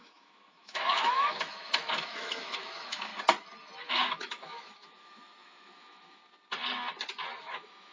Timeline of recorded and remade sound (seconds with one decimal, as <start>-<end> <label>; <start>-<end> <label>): 0.0-3.1 remade; 3.1-3.9 recorded; 3.9-6.2 remade; 6.2-7.4 recorded; 7.4-7.9 remade